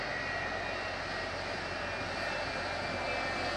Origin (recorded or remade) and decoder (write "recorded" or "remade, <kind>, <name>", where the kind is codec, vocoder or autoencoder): recorded